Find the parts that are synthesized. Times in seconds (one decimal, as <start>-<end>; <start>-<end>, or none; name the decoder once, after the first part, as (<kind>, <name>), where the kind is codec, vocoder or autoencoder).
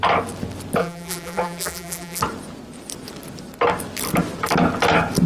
0.8-2.2 (vocoder, BigVGAN v2)